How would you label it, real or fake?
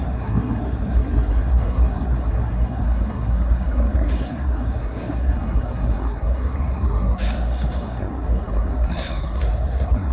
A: fake